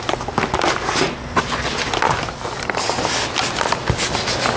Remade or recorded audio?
recorded